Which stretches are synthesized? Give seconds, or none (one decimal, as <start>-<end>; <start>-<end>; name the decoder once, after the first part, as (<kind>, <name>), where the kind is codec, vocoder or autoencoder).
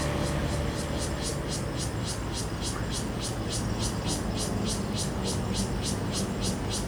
none